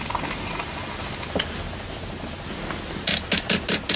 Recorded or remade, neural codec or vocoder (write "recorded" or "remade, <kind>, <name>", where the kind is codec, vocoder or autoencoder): recorded